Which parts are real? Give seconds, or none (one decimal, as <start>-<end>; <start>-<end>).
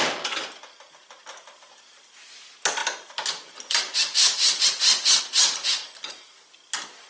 0.0-7.1